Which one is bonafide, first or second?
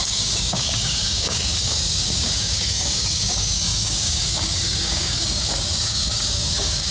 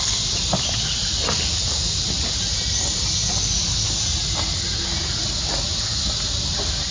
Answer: second